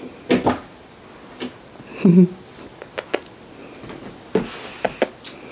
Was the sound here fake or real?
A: real